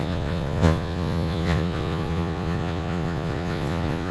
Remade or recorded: remade